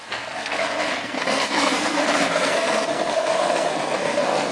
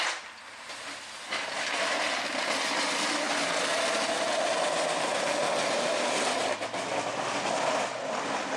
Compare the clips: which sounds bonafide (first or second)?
second